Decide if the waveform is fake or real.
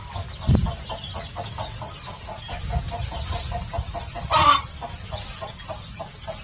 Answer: real